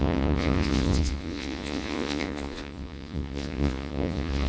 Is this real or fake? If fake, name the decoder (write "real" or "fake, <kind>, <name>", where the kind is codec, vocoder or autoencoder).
fake, vocoder, Vocos